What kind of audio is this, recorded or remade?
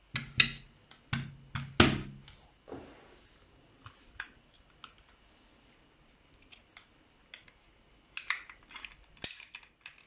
recorded